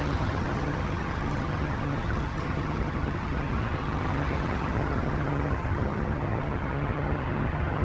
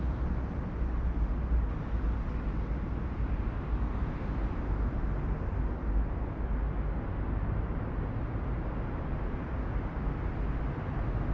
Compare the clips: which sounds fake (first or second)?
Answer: first